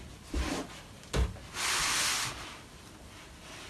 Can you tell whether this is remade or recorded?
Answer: recorded